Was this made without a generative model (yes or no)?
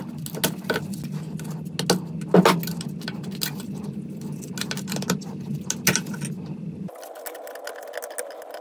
yes